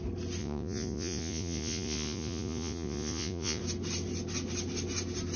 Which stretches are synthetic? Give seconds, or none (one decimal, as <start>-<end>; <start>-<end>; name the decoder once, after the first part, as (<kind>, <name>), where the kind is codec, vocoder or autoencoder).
0.4-3.6 (vocoder, Vocos)